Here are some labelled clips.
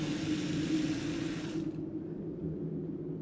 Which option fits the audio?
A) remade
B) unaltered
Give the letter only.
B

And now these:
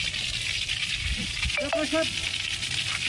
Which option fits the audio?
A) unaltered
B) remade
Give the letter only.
A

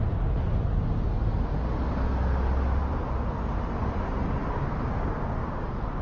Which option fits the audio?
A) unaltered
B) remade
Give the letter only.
A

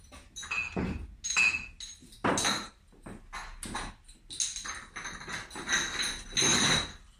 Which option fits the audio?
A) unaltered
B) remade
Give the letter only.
A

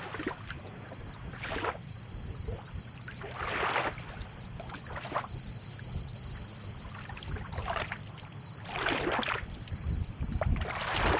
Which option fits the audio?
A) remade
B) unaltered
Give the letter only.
B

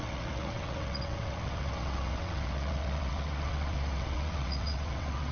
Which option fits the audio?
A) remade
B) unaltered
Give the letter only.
A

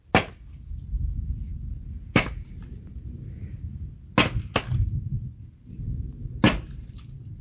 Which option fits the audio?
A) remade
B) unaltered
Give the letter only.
B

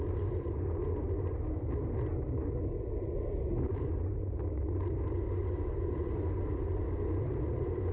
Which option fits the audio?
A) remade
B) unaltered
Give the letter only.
B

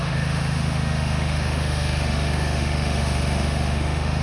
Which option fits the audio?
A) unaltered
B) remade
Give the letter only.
B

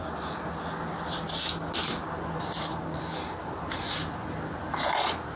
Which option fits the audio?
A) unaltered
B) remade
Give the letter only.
A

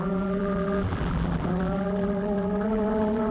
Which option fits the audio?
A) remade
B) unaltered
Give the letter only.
A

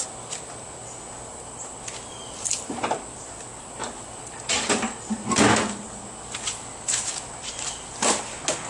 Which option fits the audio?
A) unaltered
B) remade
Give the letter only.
A